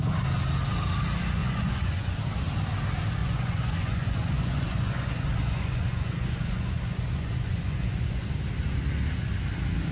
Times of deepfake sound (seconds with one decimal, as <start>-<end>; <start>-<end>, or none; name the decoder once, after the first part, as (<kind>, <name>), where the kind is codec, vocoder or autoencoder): 1.4-2.2 (vocoder, Vocos); 3.2-8.3